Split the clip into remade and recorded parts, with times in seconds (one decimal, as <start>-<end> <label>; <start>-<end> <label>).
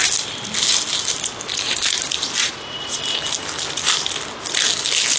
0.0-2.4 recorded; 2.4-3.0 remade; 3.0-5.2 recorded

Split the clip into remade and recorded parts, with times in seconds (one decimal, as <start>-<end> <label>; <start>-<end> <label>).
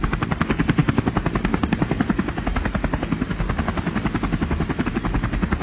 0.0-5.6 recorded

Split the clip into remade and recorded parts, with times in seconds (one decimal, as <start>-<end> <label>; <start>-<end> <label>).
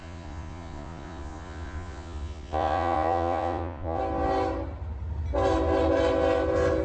0.0-4.0 remade; 4.0-6.8 recorded